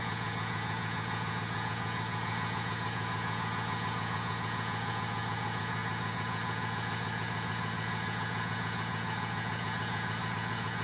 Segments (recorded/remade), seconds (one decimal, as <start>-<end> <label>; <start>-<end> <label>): 0.0-10.8 remade